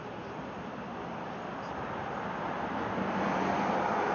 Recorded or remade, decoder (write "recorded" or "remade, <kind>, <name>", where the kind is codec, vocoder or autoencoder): recorded